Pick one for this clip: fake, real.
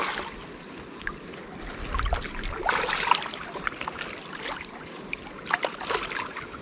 real